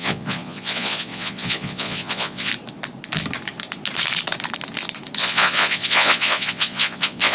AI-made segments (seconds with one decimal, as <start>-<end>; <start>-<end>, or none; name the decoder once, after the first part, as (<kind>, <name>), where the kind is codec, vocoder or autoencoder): 0.0-2.5 (vocoder, Vocos); 5.2-7.3